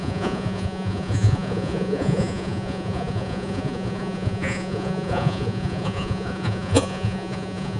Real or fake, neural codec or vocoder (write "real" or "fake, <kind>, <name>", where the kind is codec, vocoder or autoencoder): fake, vocoder, Vocos